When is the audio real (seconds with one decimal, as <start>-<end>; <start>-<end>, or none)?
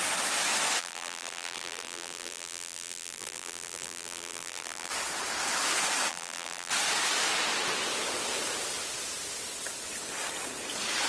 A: 0.0-0.8; 4.9-6.1; 6.7-11.1